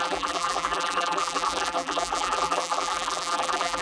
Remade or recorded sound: remade